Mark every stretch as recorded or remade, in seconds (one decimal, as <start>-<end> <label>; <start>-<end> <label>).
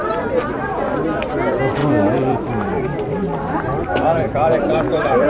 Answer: 0.0-1.8 recorded; 1.8-5.3 remade